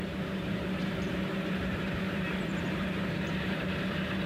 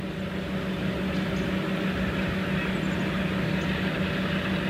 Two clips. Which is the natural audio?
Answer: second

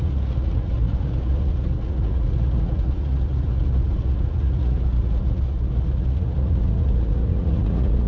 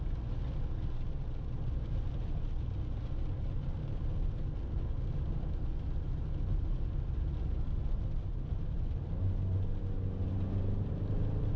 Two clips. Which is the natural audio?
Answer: second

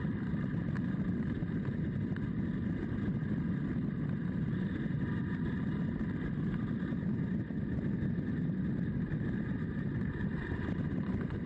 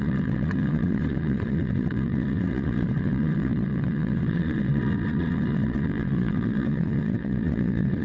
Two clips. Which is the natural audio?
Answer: first